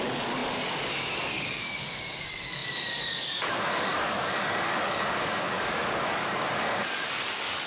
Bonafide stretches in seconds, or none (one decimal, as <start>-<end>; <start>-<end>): none